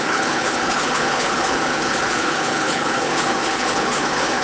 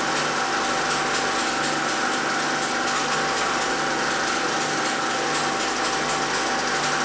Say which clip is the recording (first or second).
second